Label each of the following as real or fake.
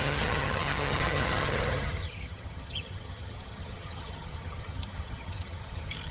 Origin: fake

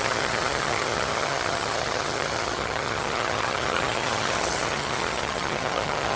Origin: fake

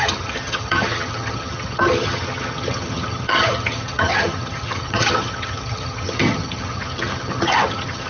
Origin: fake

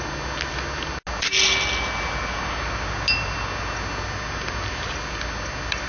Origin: real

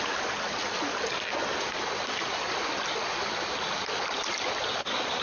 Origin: real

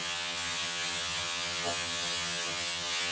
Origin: fake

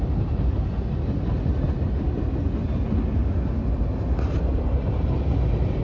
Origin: real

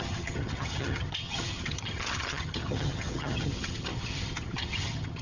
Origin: fake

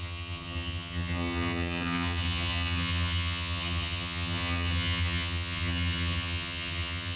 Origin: fake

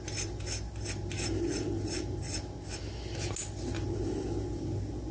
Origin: real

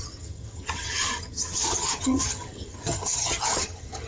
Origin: fake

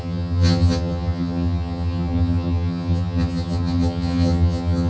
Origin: fake